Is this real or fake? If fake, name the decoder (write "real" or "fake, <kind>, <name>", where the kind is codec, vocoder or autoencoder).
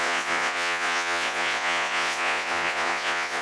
fake, vocoder, Vocos